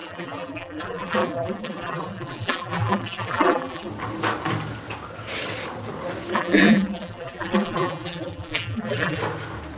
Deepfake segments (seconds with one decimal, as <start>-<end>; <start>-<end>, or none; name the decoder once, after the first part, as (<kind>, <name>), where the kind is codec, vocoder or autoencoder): 0.0-3.9 (vocoder, BigVGAN v2); 6.3-9.2